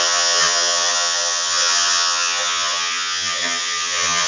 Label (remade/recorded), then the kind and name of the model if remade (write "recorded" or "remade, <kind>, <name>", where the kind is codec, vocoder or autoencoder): remade, vocoder, HiFi-GAN